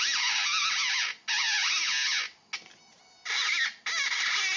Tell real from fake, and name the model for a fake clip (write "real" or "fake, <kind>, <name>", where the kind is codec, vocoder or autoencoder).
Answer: real